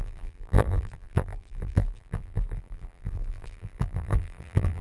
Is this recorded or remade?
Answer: remade